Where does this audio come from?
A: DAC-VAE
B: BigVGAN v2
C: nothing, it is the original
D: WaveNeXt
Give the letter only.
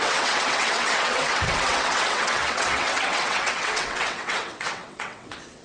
D